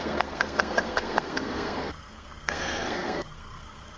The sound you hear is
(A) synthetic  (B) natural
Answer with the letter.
A